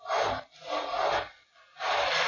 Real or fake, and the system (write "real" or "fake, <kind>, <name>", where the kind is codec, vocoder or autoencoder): real